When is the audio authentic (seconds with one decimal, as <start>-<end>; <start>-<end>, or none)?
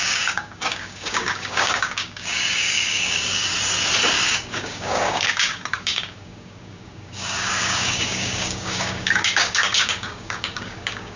3.5-4.1